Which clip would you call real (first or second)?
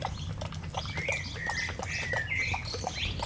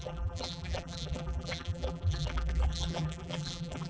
first